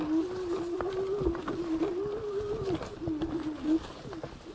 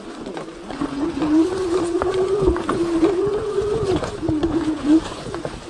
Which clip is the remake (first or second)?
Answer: second